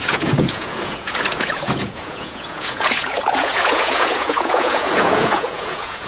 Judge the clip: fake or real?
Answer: fake